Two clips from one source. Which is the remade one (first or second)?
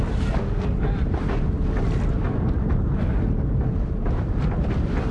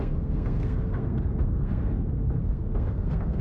second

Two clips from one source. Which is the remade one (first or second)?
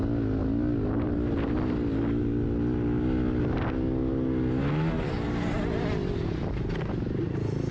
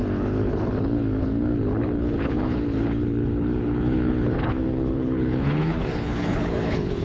second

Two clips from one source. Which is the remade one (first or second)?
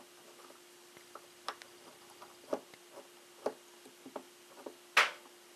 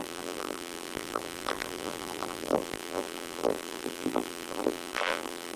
second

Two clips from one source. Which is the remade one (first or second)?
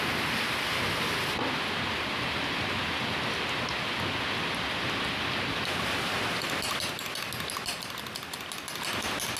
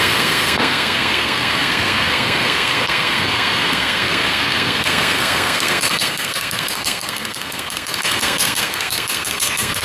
second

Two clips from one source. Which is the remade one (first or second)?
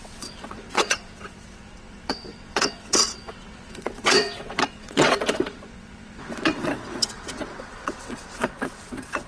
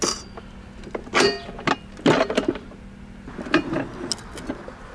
first